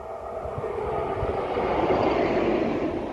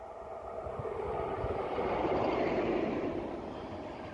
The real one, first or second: first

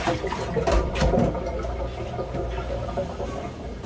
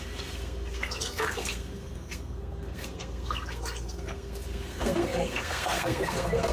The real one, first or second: first